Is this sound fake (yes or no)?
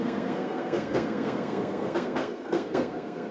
yes